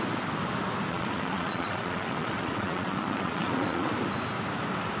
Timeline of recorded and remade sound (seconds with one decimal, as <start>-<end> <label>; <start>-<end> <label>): 0.0-0.9 recorded; 0.9-3.9 remade; 3.9-5.0 recorded